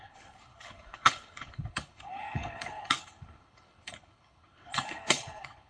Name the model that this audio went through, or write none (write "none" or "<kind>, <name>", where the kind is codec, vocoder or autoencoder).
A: codec, HILCodec